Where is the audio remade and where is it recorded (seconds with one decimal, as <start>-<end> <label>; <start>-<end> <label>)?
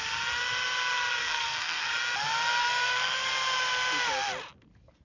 0.0-1.2 recorded; 1.2-1.9 remade; 1.9-2.6 recorded; 2.6-3.3 remade; 3.3-5.0 recorded